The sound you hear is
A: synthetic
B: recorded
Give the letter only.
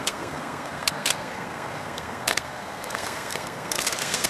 A